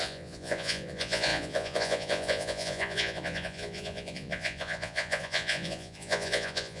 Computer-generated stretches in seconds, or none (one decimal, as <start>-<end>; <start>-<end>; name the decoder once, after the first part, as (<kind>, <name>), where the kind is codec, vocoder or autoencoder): 0.0-6.8 (vocoder, Vocos)